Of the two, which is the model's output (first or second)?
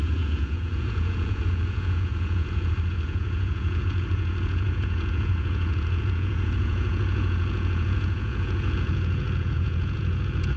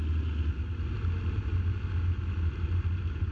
first